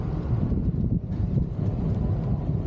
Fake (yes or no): yes